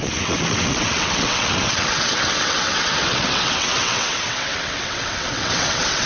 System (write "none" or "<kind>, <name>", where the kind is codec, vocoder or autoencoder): vocoder, WaveNeXt